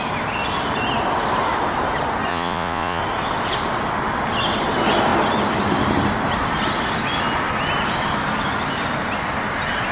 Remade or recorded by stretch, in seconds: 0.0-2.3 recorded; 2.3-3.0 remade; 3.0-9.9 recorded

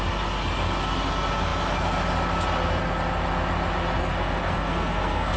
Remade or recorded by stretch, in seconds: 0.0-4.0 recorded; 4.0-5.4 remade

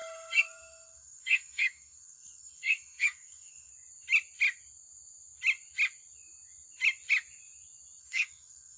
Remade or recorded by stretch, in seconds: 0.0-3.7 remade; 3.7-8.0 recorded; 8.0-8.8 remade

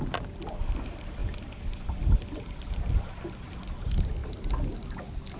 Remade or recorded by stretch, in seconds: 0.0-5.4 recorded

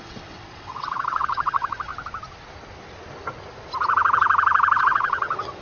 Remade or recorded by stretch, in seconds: 0.0-1.9 remade; 1.9-4.8 recorded; 4.8-5.6 remade

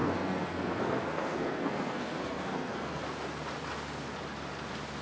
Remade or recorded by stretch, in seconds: 0.0-3.0 remade; 3.0-5.0 recorded

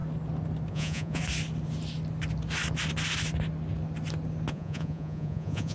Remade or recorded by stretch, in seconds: 0.0-0.7 recorded; 0.7-1.2 remade; 1.2-4.5 recorded; 4.5-5.7 remade

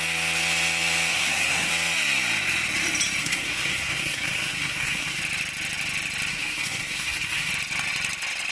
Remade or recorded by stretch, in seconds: 0.0-1.1 recorded; 1.1-1.7 remade; 1.7-3.2 recorded; 3.2-5.2 remade; 5.2-6.3 recorded; 6.3-7.5 remade; 7.5-8.5 recorded